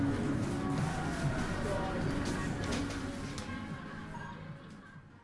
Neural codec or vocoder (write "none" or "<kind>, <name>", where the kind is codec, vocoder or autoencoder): none